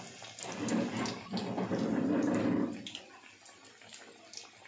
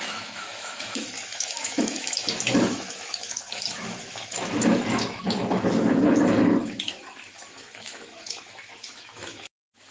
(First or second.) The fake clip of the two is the second